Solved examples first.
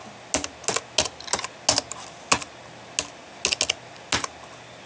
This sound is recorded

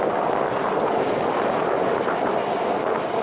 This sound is recorded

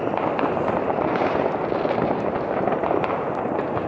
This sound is recorded